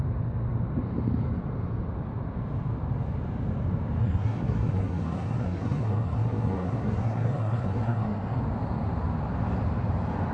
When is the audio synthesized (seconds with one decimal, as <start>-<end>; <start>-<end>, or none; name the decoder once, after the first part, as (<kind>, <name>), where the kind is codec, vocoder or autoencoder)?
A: 4.0-8.4 (codec, SNAC)